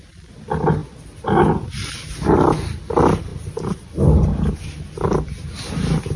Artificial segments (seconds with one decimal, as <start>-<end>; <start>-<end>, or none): none